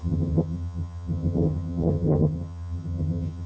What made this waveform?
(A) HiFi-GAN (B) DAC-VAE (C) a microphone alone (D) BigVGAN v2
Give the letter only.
A